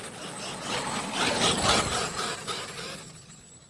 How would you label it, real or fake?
real